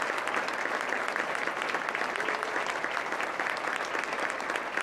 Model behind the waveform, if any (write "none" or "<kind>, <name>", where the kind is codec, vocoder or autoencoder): none